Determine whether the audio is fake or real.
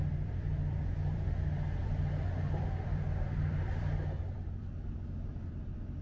fake